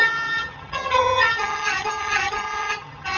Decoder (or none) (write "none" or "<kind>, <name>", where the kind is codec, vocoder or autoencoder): vocoder, HiFi-GAN